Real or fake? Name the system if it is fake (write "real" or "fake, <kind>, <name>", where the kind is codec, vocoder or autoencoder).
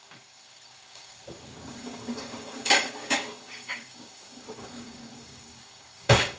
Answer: fake, codec, DAC